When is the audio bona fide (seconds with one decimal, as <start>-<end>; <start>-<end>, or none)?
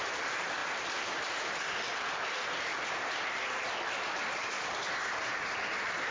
0.0-6.1